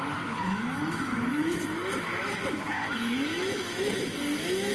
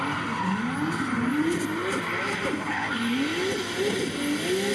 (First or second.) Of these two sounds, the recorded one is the second